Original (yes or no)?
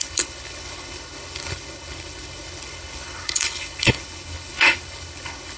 no